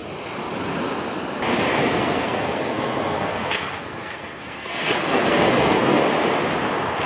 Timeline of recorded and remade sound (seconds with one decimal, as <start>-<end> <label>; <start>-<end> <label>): 0.0-1.7 recorded; 1.7-6.0 remade; 6.0-7.1 recorded